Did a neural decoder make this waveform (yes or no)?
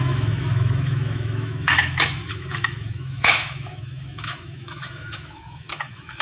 yes